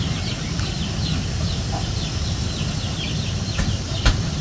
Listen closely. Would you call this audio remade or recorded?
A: recorded